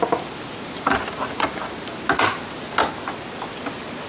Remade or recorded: recorded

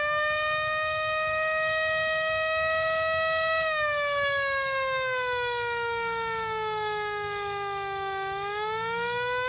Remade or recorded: remade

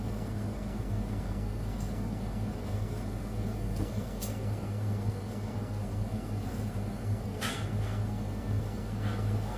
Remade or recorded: remade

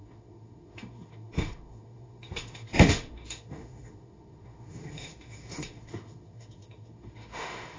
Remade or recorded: remade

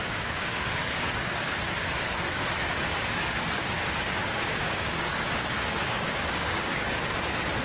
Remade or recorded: remade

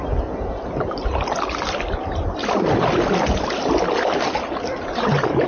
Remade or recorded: recorded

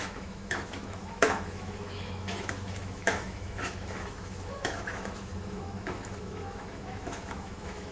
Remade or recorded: remade